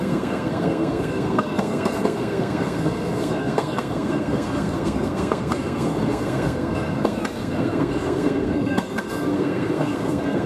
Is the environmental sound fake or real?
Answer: fake